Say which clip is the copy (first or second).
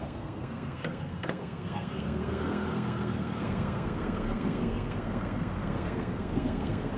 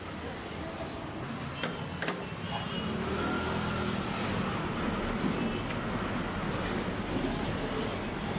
first